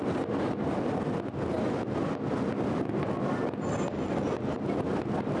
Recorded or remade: recorded